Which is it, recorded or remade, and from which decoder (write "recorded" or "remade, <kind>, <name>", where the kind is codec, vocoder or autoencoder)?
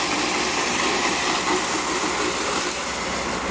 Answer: recorded